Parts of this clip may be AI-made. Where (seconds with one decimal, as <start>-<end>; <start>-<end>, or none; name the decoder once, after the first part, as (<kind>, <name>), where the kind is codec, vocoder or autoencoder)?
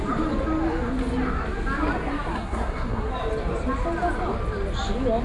2.3-3.1 (codec, SNAC)